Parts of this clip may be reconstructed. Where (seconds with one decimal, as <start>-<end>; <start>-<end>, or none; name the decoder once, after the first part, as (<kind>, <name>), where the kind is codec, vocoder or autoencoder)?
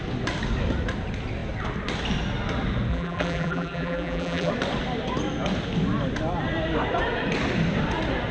2.9-4.5 (vocoder, BigVGAN v2)